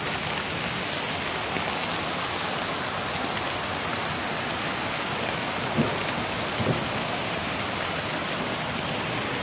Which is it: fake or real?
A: real